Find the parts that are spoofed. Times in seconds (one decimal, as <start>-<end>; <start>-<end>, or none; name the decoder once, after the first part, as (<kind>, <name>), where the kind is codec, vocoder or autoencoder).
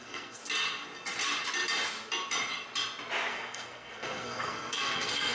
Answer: 0.0-0.4 (codec, SNAC); 3.3-5.3